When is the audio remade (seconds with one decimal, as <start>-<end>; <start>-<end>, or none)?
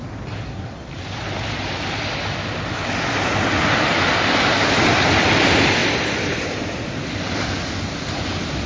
none